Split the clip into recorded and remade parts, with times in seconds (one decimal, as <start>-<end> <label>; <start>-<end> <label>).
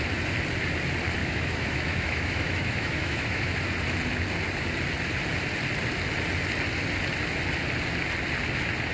0.0-1.2 recorded; 1.2-3.5 remade; 3.5-8.9 recorded